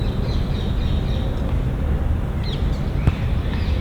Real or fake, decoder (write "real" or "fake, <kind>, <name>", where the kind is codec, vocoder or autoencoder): real